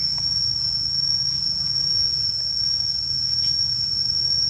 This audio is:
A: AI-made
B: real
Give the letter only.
A